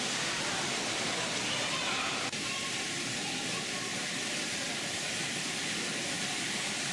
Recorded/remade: recorded